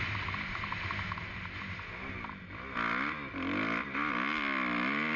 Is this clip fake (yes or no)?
no